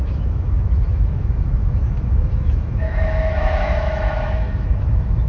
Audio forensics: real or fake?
fake